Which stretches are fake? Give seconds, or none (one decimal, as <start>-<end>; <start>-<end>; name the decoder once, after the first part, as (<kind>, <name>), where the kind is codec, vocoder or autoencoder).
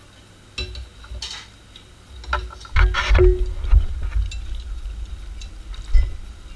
none